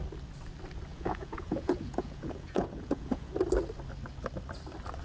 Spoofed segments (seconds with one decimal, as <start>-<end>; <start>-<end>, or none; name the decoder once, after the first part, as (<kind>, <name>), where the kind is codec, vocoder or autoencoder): 0.9-3.3 (vocoder, Vocos)